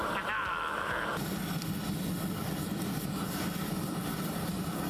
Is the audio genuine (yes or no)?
no